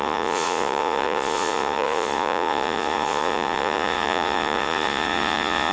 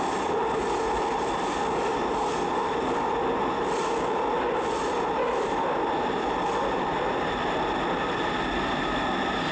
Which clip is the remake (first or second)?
first